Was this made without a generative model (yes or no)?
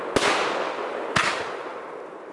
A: yes